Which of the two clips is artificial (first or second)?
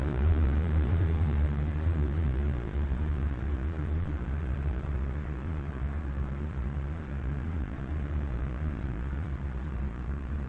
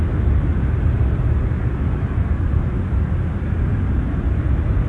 first